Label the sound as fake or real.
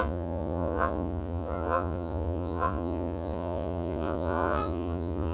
fake